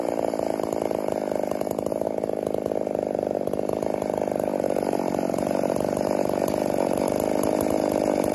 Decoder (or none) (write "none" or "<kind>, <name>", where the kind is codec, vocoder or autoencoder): none